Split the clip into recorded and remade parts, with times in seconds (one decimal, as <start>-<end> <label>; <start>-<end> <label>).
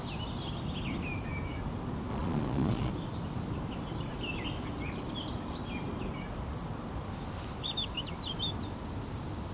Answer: 0.0-2.1 recorded; 2.1-2.9 remade; 2.9-9.5 recorded